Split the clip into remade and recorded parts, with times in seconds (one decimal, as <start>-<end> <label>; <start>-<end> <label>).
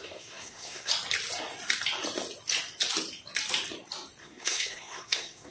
0.0-0.9 remade; 0.9-4.2 recorded; 4.2-5.5 remade